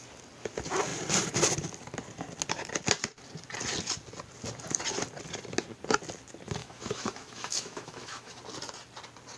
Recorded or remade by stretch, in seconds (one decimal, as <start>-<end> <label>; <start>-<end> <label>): 0.0-6.6 recorded; 6.6-8.4 remade; 8.4-9.4 recorded